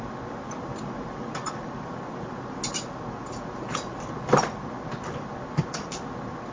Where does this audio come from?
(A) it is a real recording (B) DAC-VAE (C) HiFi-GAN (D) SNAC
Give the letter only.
A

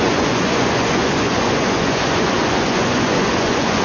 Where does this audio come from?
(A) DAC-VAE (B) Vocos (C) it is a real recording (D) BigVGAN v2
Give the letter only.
B